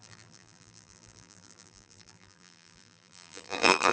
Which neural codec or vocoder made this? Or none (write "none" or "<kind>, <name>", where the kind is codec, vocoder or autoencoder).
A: vocoder, BigVGAN v2